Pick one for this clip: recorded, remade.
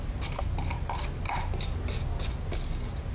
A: recorded